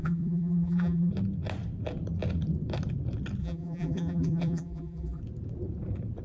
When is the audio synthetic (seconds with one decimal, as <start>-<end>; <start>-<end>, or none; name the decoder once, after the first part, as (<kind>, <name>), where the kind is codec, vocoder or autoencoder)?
0.0-1.1 (vocoder, BigVGAN v2); 3.4-5.2